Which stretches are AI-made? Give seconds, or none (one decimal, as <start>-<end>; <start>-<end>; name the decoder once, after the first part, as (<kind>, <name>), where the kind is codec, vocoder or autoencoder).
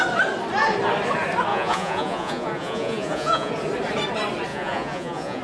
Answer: 1.5-3.5 (vocoder, Vocos); 4.5-5.4